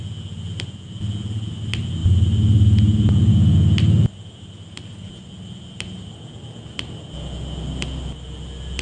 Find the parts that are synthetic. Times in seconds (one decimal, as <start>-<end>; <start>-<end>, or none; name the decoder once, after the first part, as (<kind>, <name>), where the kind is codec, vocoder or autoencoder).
none